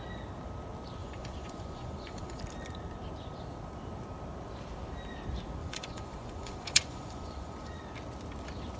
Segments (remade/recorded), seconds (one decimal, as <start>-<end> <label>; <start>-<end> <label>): 0.0-1.0 recorded; 1.0-2.4 remade; 2.4-5.6 recorded; 5.6-7.8 remade; 7.8-8.8 recorded